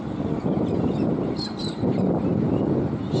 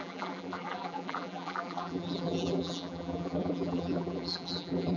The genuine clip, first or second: first